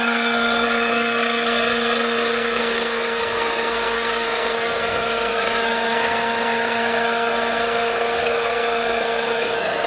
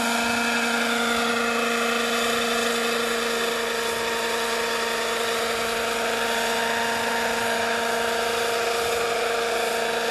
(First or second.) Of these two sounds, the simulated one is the first